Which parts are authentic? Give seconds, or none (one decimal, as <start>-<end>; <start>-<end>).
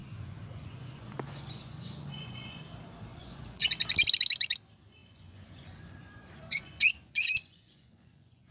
2.6-3.1; 3.7-5.0